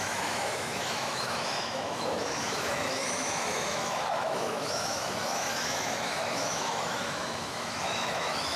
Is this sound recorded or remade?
remade